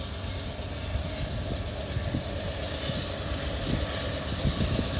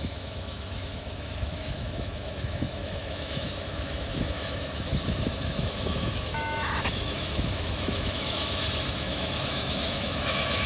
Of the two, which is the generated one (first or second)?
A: second